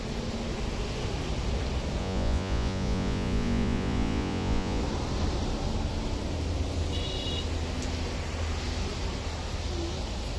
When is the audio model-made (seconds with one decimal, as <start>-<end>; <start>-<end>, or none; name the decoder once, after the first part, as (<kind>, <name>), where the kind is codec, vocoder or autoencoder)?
2.0-4.8 (vocoder, Vocos)